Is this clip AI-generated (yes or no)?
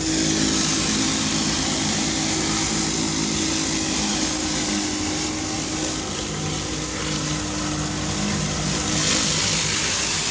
no